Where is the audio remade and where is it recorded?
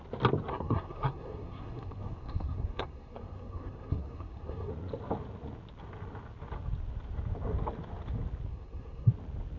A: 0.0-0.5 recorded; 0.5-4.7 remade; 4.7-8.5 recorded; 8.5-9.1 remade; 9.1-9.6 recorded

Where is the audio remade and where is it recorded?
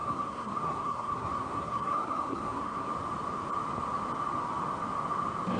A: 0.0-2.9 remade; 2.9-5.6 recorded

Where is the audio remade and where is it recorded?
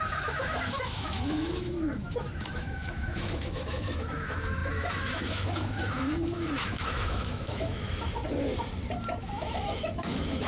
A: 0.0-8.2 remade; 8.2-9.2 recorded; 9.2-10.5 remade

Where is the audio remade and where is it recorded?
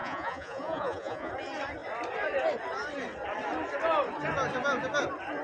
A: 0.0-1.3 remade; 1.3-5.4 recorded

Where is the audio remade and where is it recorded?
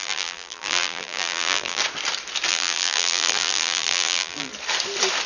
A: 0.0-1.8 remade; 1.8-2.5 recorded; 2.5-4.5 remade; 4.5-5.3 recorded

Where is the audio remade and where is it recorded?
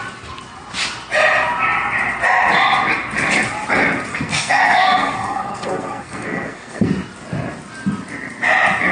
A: 0.0-4.1 recorded; 4.1-6.9 remade; 6.9-8.9 recorded